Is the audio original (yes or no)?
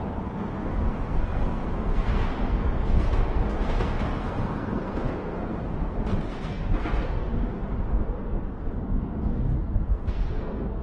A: no